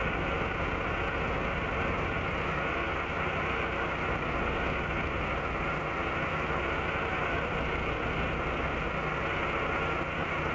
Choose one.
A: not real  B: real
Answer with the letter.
B